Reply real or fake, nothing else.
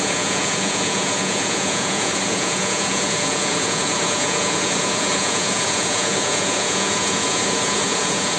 fake